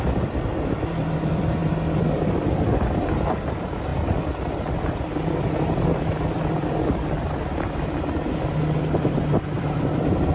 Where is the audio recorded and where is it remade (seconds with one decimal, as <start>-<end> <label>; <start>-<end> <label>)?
0.0-1.6 remade; 1.6-2.6 recorded; 2.6-5.9 remade; 5.9-8.8 recorded; 8.8-10.3 remade